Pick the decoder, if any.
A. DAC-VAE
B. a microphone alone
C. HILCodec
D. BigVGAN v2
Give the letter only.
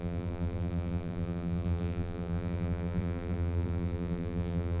D